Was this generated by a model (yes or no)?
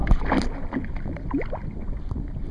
no